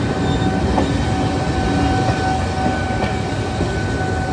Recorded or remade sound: recorded